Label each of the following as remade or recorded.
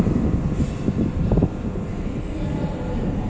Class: recorded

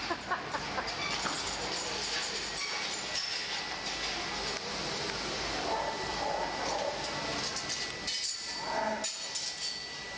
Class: recorded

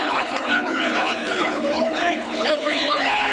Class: remade